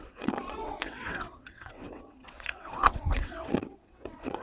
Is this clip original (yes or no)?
no